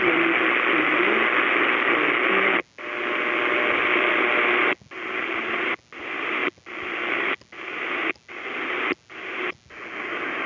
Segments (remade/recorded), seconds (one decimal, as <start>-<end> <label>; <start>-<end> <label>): 0.0-10.5 recorded